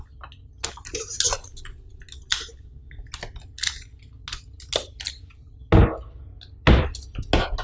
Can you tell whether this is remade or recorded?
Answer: recorded